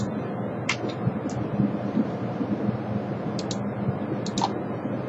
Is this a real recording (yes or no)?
yes